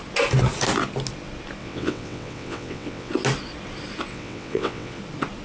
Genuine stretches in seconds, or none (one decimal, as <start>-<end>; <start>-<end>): 0.0-1.6; 3.1-4.1; 5.0-5.4